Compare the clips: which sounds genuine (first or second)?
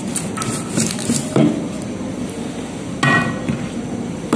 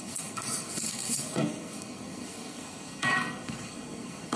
first